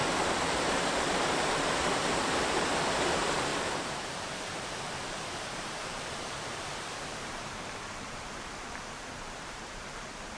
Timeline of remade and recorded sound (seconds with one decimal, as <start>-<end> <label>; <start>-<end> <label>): 0.0-0.5 recorded; 0.5-3.5 remade; 3.5-4.0 recorded; 4.0-10.4 remade